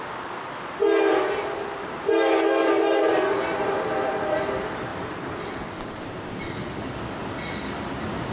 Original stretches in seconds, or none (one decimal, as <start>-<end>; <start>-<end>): 0.0-2.6; 4.5-4.9; 6.6-8.3